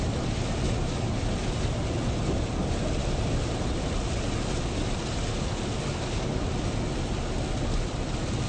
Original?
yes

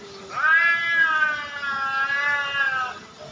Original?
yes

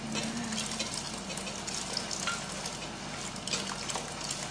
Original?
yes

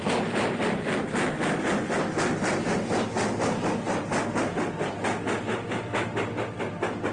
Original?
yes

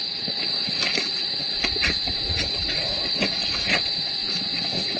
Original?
no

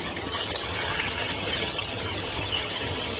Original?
no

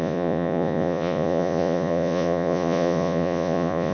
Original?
no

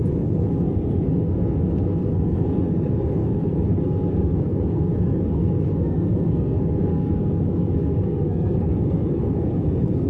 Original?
no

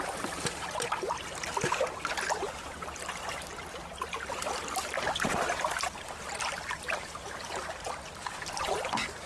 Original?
yes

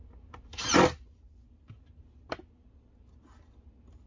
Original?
yes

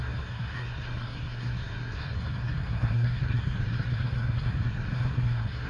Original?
no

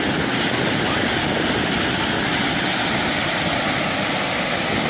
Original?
yes